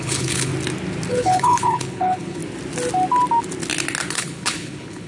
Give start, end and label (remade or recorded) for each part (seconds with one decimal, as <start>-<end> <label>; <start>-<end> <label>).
0.0-0.5 remade; 0.5-1.1 recorded; 1.1-2.4 remade; 2.4-4.1 recorded; 4.1-5.1 remade